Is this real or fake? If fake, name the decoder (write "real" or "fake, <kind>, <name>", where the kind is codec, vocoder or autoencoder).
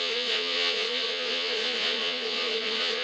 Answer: fake, vocoder, Vocos